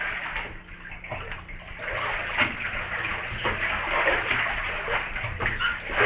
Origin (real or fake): real